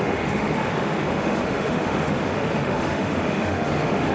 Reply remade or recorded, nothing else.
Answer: remade